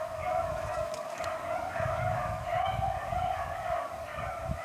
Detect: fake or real fake